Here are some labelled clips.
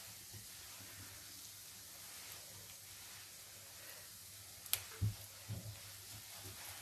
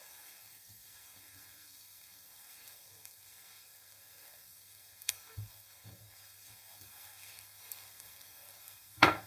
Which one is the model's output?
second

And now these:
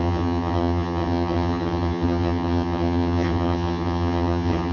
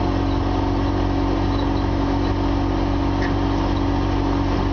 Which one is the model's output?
first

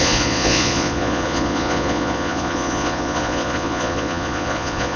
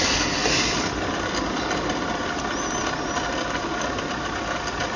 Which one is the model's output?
first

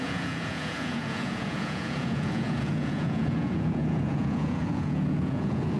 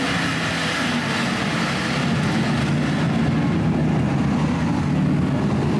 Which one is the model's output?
first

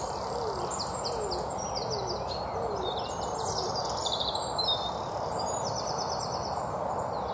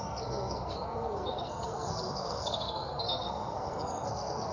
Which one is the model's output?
second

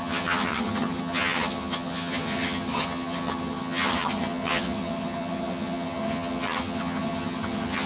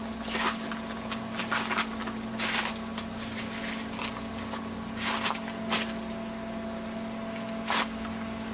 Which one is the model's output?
first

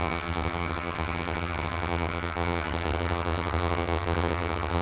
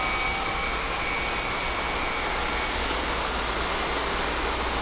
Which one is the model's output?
first